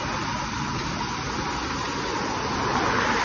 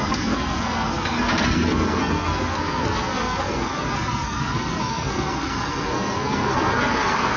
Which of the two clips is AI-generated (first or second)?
second